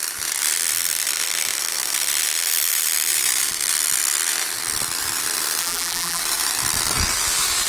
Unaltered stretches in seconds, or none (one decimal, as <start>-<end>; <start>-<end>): 0.0-5.6; 6.2-7.7

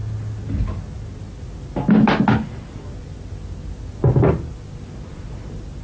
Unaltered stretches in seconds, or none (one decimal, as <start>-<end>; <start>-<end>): 0.0-5.8

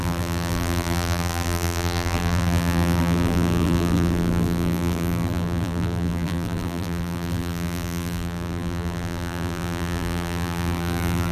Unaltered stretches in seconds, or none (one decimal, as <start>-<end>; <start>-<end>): none

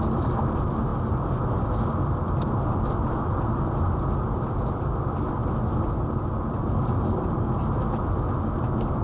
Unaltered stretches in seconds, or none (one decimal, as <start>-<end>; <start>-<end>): 0.0-9.0

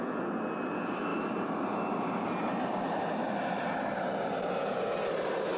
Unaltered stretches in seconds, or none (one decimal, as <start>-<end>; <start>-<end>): 0.0-1.1; 4.5-5.6

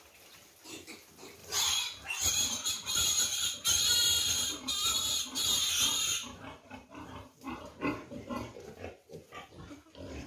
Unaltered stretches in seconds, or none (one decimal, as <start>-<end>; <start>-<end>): 0.0-1.4; 2.3-6.8; 7.6-10.3